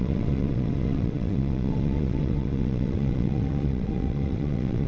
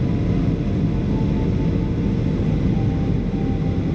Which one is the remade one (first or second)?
first